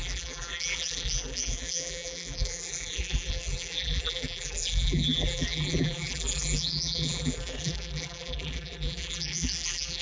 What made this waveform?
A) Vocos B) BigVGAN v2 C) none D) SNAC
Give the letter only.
B